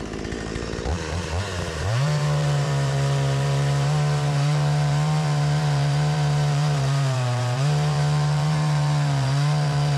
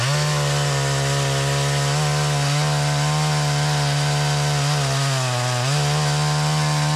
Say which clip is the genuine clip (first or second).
second